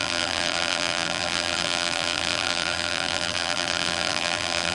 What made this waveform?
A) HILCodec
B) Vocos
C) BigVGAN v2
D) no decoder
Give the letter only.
C